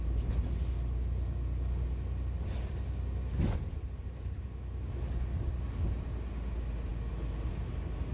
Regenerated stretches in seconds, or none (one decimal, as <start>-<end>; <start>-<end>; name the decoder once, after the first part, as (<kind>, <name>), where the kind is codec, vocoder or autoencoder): none